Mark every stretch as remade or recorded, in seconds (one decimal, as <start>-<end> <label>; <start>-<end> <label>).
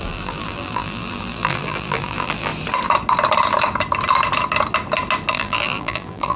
0.0-2.5 remade; 2.5-5.3 recorded; 5.3-6.4 remade